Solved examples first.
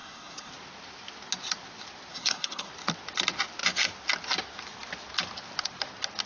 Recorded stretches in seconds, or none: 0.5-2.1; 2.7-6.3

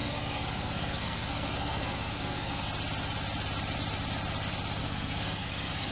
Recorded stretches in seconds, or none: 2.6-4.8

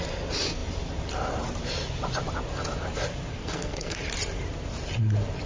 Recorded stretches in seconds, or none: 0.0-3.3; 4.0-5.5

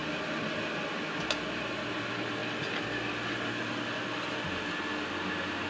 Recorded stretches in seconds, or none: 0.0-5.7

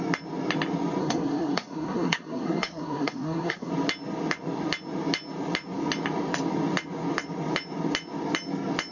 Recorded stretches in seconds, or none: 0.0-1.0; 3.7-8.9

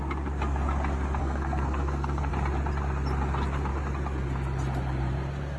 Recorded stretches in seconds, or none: 0.0-1.2; 2.3-5.6

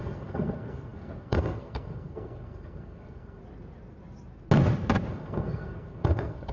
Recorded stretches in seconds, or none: 3.4-5.1

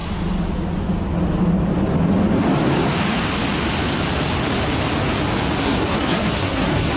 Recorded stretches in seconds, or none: 0.0-5.6